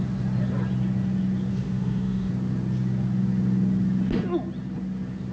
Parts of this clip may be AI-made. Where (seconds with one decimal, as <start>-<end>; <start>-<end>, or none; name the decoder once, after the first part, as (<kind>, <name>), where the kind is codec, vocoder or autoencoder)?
1.5-2.3 (autoencoder, DAC-VAE)